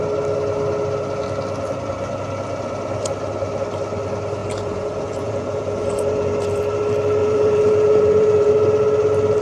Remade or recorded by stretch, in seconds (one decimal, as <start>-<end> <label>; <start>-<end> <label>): 0.0-4.4 recorded; 4.4-6.6 remade; 6.6-7.2 recorded; 7.2-8.5 remade; 8.5-9.4 recorded